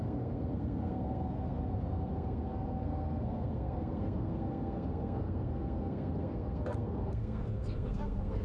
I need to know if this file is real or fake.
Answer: fake